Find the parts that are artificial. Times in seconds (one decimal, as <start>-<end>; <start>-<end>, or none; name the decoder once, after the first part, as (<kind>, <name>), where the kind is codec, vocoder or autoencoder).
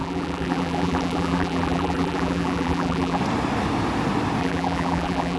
0.0-3.2 (vocoder, BigVGAN v2); 4.4-5.4